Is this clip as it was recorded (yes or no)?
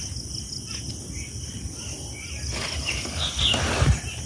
yes